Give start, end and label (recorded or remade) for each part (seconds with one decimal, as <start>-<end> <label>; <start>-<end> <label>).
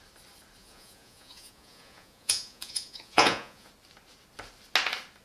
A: 0.0-0.6 recorded; 0.6-3.7 remade; 3.7-5.2 recorded